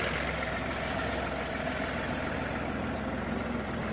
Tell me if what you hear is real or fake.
real